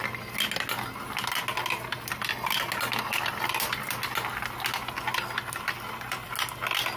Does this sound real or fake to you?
real